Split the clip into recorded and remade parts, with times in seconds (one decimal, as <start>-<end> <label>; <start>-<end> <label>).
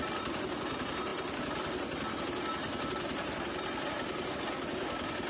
0.0-5.3 recorded